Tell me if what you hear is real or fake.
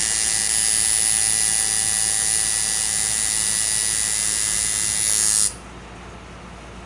real